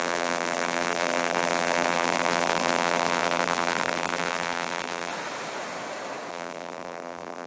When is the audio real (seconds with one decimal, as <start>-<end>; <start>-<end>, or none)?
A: 5.1-6.3